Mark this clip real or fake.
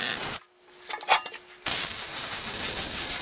real